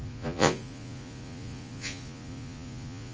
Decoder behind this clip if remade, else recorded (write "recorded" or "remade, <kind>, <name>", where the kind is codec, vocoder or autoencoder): remade, vocoder, Vocos